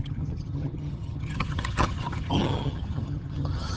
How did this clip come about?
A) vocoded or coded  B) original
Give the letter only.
A